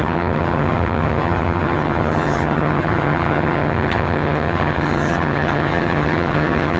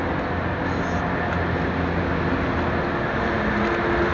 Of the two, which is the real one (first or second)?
second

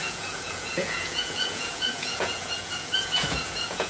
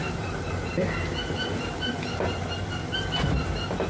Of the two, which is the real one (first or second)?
second